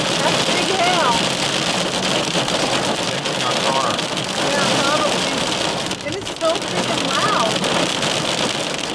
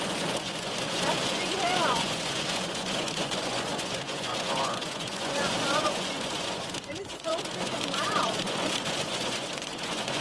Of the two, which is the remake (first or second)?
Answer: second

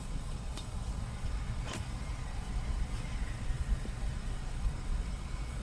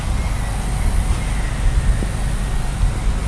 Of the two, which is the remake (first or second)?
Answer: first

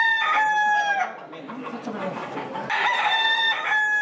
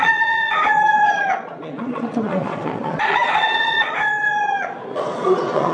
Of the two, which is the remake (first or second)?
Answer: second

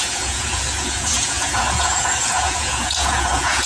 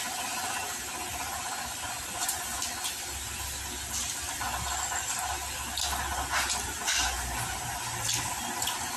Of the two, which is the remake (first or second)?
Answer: first